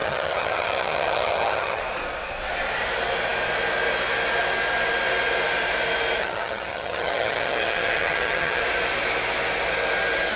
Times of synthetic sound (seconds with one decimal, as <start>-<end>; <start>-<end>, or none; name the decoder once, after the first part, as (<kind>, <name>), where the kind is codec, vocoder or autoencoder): 0.0-1.8 (vocoder, HiFi-GAN); 6.2-8.6